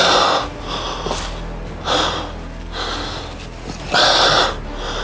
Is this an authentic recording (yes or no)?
yes